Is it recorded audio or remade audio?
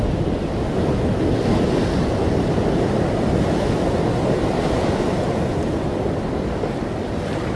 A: recorded